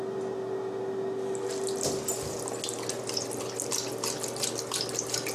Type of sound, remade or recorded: recorded